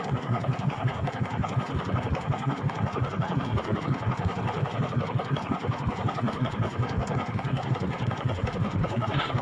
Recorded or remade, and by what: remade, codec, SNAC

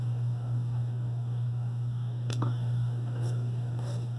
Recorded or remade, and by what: remade, codec, DAC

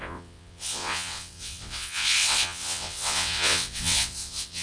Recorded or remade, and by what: remade, vocoder, WaveNeXt